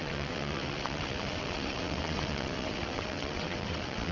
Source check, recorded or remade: remade